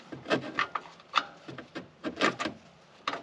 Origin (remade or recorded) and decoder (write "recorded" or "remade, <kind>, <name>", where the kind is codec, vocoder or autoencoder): recorded